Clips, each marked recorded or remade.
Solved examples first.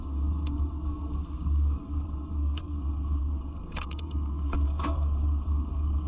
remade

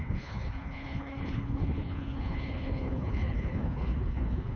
remade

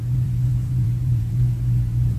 remade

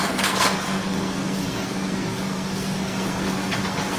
remade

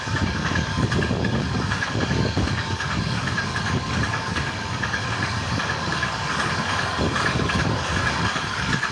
remade